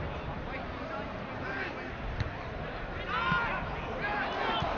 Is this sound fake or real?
real